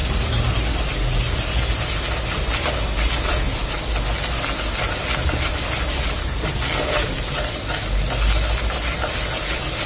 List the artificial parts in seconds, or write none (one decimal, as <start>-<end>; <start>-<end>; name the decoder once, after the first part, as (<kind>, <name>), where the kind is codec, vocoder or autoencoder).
none